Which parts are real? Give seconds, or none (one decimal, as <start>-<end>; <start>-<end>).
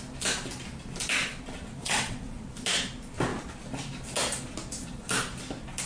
0.0-1.8; 2.4-5.9